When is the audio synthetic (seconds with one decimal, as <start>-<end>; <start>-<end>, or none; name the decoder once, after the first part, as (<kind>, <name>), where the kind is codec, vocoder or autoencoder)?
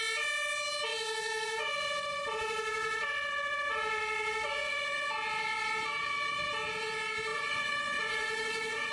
0.9-5.1 (vocoder, Vocos); 7.3-8.9